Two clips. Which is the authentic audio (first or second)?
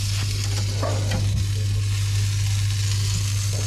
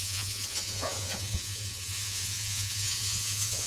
first